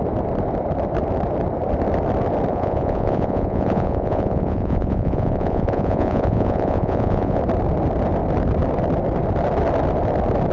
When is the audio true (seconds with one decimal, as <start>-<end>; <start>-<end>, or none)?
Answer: 0.0-2.5; 7.4-10.5